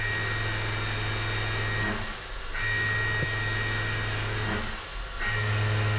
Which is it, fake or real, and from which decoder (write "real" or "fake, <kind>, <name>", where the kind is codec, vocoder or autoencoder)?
real